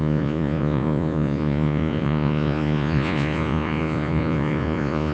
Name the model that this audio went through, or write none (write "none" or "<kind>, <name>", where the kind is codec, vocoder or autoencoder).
vocoder, Vocos